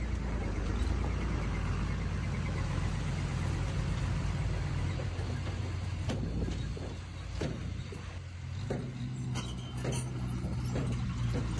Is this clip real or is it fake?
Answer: real